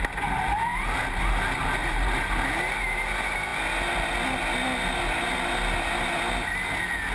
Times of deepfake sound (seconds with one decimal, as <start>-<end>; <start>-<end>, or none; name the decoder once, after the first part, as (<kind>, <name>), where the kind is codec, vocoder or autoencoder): 0.7-1.2 (vocoder, BigVGAN v2); 1.8-2.3